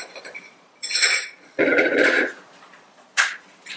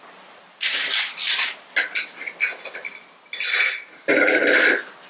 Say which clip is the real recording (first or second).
second